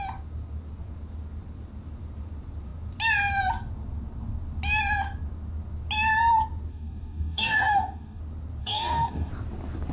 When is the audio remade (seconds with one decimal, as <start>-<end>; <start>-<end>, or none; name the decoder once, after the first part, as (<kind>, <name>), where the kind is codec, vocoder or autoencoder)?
6.7-8.2 (codec, DAC); 8.6-9.3